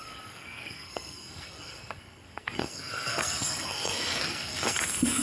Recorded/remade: remade